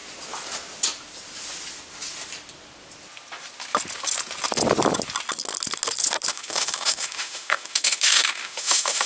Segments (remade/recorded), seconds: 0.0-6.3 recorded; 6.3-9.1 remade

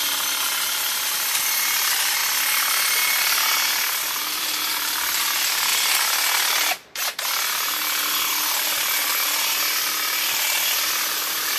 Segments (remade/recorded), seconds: 0.0-11.6 recorded

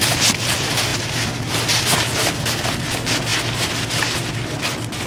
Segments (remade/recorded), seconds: 0.0-5.1 recorded

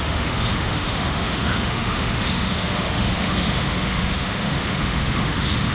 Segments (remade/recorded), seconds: 0.0-5.7 remade

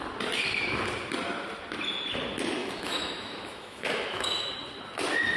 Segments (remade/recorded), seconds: 0.0-2.6 recorded; 2.6-4.5 remade; 4.5-5.4 recorded

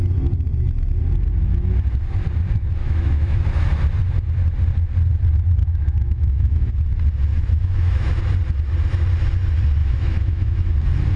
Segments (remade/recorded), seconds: 0.0-2.8 recorded; 2.8-3.4 remade; 3.4-5.6 recorded; 5.6-6.7 remade; 6.7-7.3 recorded; 7.3-8.2 remade; 8.2-9.8 recorded; 9.8-10.7 remade; 10.7-11.2 recorded

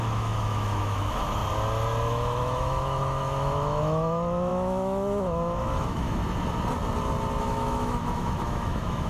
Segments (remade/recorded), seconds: 0.0-1.4 remade; 1.4-2.1 recorded; 2.1-6.2 remade; 6.2-7.4 recorded; 7.4-9.1 remade